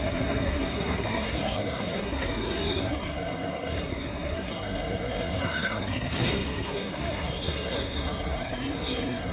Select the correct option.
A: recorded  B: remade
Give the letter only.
B